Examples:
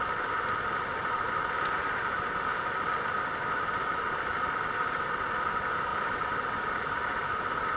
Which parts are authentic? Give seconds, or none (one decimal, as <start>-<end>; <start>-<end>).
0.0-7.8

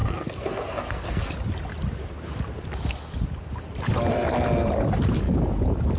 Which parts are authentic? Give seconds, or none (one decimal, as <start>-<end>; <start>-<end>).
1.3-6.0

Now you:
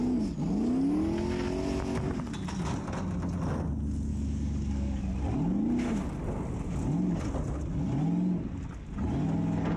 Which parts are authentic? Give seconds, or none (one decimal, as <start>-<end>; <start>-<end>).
0.0-4.1; 5.0-9.8